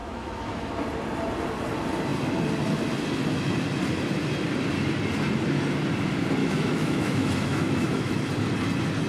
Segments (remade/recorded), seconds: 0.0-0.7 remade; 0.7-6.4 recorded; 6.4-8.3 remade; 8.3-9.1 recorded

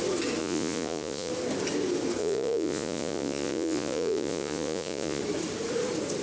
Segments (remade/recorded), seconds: 0.0-0.4 recorded; 0.4-1.3 remade; 1.3-2.2 recorded; 2.2-5.2 remade; 5.2-6.2 recorded

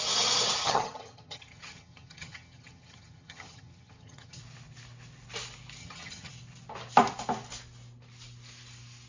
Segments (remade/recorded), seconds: 0.0-0.6 recorded; 0.6-4.4 remade; 4.4-5.8 recorded; 5.8-6.3 remade; 6.3-9.1 recorded

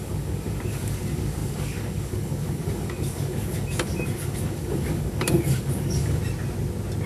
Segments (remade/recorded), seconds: 0.0-6.2 remade; 6.2-7.1 recorded